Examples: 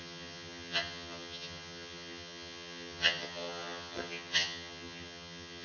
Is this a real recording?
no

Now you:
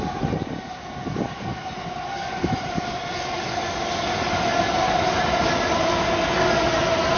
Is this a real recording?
yes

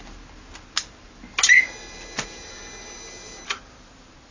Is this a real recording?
yes